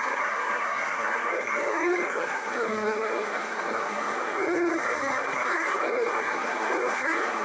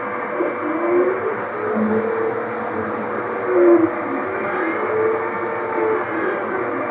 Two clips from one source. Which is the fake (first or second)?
first